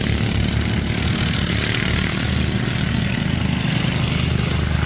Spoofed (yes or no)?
no